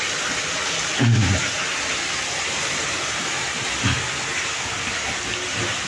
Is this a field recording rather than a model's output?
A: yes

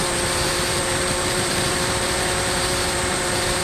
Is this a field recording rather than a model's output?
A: no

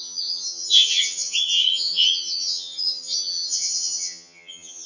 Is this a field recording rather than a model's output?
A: no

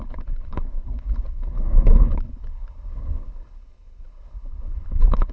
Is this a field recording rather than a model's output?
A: no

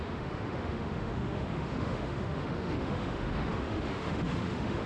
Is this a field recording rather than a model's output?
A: no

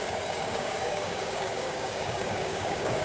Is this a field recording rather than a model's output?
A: no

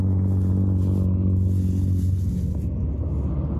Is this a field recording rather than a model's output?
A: yes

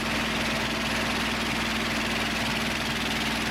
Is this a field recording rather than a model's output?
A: yes